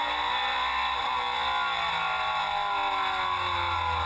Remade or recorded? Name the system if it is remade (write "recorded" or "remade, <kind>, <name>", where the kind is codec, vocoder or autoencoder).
recorded